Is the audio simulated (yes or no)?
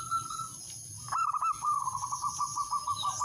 no